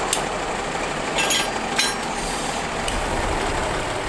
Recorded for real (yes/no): yes